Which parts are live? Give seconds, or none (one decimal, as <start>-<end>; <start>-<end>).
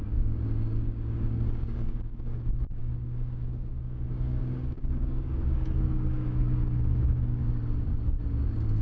7.4-8.4